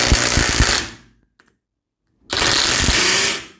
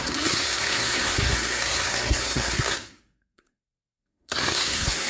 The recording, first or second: first